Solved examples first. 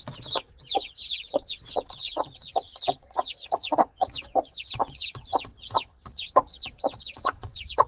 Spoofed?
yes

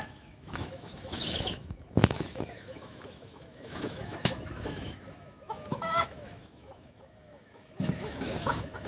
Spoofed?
yes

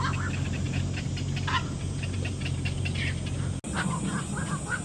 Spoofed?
no